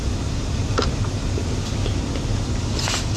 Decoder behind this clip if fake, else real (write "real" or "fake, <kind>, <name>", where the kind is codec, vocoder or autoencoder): real